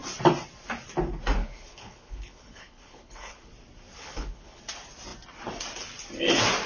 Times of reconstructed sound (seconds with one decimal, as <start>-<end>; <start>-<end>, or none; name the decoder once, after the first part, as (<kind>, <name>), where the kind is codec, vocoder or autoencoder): 1.4-3.5 (codec, HILCodec); 4.0-4.6